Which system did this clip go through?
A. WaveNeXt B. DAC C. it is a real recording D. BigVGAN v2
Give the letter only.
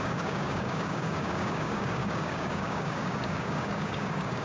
B